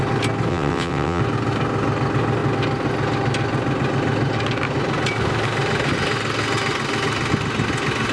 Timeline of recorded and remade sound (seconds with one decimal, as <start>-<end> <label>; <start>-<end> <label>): 0.0-0.5 recorded; 0.5-1.2 remade; 1.2-8.1 recorded